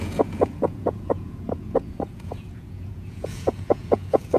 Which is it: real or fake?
fake